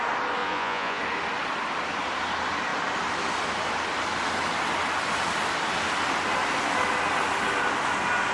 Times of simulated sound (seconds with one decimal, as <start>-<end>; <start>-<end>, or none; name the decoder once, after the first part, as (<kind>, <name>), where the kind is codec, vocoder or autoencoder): 0.4-1.0 (vocoder, Vocos)